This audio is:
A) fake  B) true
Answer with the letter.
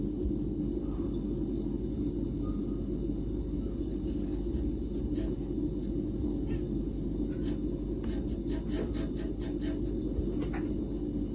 B